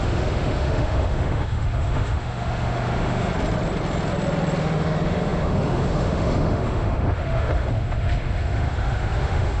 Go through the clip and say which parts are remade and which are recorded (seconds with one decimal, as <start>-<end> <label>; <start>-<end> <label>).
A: 0.0-3.3 remade; 3.3-4.6 recorded; 4.6-9.6 remade